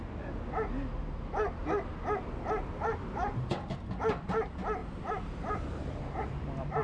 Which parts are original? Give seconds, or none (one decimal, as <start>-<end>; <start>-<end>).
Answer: 0.0-4.8; 6.2-6.8